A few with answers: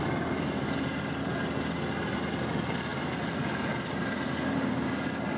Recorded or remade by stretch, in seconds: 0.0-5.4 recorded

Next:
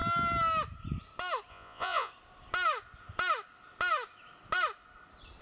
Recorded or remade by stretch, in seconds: 0.0-1.5 recorded; 1.5-2.1 remade; 2.1-5.4 recorded

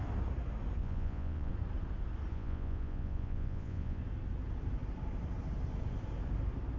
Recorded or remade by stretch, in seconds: 0.0-0.8 recorded; 0.8-1.5 remade; 1.5-2.3 recorded; 2.3-4.0 remade; 4.0-6.8 recorded

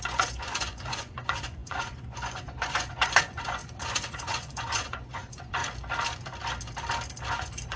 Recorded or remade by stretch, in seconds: 0.0-5.6 remade; 5.6-7.3 recorded; 7.3-7.8 remade

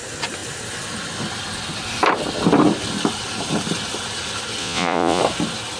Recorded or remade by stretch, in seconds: 0.0-4.6 recorded; 4.6-5.2 remade; 5.2-5.8 recorded

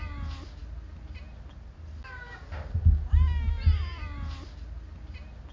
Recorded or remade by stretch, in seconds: 0.0-5.5 recorded

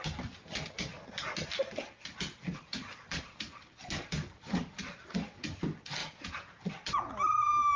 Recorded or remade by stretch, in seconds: 0.0-6.0 recorded; 6.0-6.7 remade; 6.7-7.8 recorded

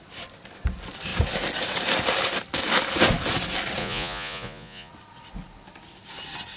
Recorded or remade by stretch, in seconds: 0.0-3.8 recorded; 3.8-4.9 remade; 4.9-6.6 recorded